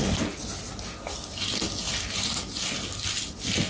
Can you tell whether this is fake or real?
real